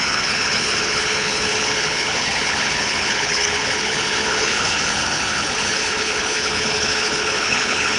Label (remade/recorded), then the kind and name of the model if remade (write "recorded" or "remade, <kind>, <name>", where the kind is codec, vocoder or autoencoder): remade, codec, HILCodec